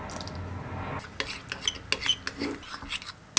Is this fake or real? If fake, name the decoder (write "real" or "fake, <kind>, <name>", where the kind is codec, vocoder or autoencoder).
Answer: real